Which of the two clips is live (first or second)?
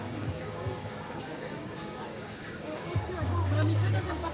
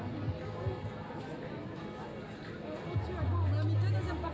second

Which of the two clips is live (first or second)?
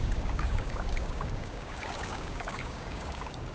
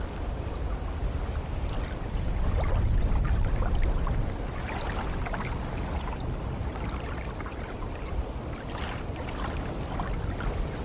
second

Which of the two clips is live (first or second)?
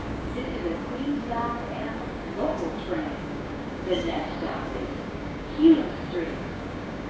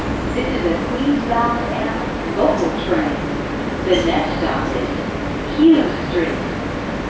second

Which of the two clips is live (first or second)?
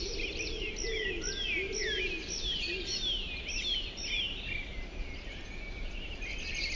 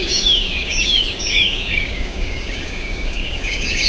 first